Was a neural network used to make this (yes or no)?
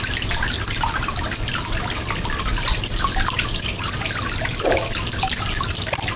no